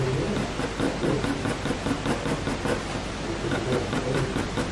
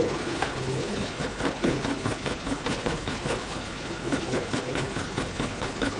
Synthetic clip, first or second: second